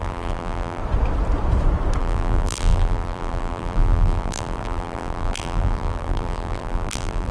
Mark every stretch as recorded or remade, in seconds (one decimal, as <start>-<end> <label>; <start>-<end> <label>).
0.0-0.8 remade; 0.8-2.0 recorded; 2.0-7.3 remade